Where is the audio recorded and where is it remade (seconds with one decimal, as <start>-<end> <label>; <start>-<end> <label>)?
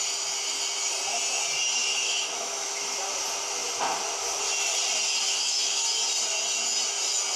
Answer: 0.0-1.9 recorded; 1.9-2.8 remade; 2.8-5.3 recorded; 5.3-5.8 remade; 5.8-7.4 recorded